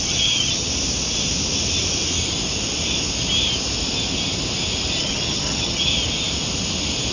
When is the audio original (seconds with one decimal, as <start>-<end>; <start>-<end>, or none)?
0.7-5.0; 5.9-7.1